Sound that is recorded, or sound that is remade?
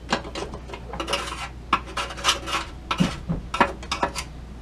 recorded